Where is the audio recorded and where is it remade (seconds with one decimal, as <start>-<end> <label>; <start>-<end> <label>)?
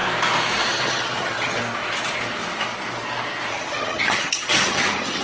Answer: 0.0-0.7 recorded; 0.7-1.6 remade; 1.6-3.5 recorded; 3.5-5.2 remade